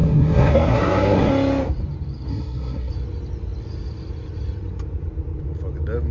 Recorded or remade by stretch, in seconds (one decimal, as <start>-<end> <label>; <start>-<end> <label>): 0.0-1.3 remade; 1.3-2.3 recorded; 2.3-2.9 remade; 2.9-6.1 recorded